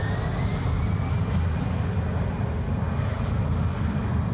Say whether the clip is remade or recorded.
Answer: recorded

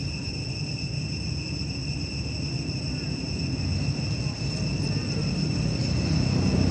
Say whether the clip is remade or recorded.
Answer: remade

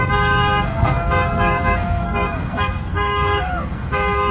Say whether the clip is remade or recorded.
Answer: remade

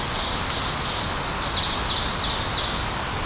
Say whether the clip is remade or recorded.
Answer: recorded